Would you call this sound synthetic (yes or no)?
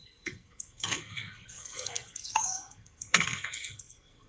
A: yes